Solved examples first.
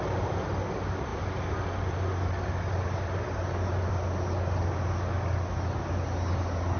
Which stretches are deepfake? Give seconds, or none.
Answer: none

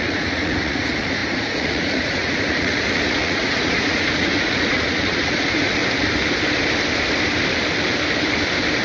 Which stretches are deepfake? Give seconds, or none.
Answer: 0.0-5.8 (vocoder, Vocos)

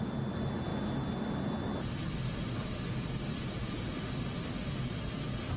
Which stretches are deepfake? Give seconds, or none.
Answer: none

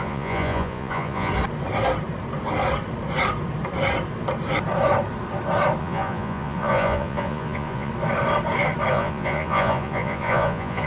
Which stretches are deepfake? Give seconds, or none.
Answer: 0.0-1.3 (vocoder, Vocos); 5.8-7.9; 8.9-10.9

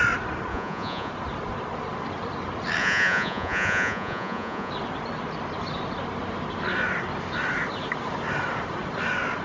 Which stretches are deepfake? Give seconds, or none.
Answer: 0.5-1.1 (vocoder, Vocos); 2.8-4.7

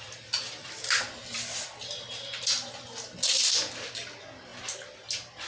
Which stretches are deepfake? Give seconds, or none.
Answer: none

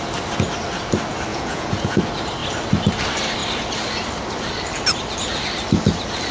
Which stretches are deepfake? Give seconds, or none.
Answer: 1.3-2.0 (vocoder, Vocos)

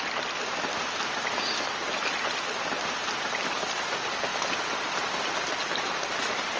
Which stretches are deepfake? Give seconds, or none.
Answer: none